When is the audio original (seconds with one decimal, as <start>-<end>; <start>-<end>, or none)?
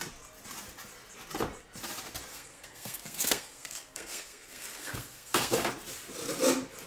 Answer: 0.0-2.3; 5.7-6.9